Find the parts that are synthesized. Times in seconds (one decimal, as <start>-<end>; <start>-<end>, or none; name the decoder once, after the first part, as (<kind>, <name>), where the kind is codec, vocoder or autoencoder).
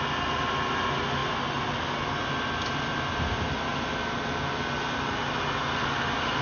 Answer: none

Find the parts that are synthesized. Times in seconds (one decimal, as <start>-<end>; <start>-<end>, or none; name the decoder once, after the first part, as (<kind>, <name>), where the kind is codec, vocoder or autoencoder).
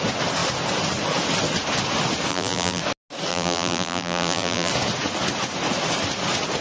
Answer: 2.3-2.8 (vocoder, BigVGAN v2); 3.3-4.7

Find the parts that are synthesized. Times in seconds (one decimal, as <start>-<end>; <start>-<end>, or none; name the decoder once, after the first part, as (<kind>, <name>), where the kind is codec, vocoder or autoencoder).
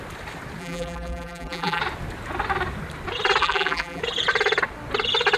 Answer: 0.6-1.8 (vocoder, BigVGAN v2); 3.4-4.0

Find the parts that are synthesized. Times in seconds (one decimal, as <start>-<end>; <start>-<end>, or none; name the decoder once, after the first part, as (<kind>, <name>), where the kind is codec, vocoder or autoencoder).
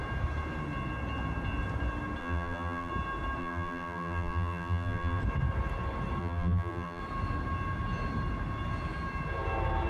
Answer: 2.2-2.9 (vocoder, BigVGAN v2); 3.4-5.2; 6.2-7.0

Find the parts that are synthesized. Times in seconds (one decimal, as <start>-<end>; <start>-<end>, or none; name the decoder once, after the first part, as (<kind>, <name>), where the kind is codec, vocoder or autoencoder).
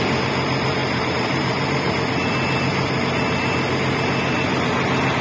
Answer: 0.8-1.9 (vocoder, BigVGAN v2)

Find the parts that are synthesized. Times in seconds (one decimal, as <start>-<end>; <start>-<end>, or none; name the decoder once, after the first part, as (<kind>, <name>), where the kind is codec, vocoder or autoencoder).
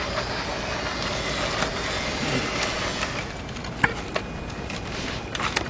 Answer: none